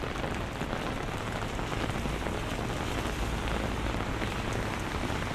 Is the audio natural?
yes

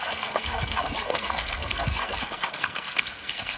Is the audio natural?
no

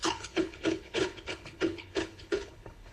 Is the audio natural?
no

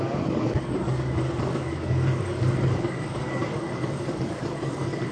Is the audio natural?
no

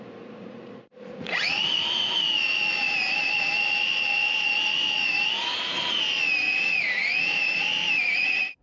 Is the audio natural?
no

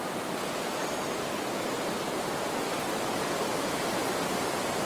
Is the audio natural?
yes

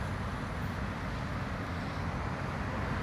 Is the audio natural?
yes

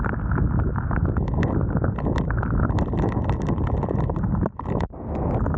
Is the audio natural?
yes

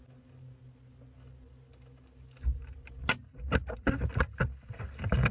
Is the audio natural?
yes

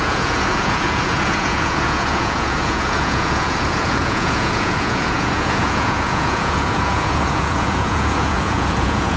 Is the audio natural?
no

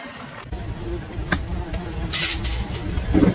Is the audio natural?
yes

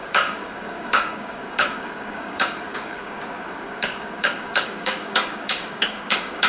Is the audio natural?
no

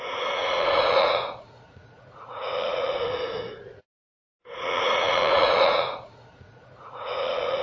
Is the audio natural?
no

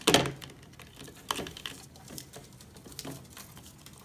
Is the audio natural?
yes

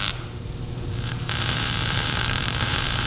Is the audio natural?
no